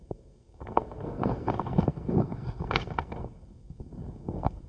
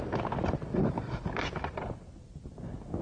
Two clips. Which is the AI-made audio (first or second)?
first